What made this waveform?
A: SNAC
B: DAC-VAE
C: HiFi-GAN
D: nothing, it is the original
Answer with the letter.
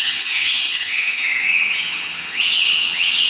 C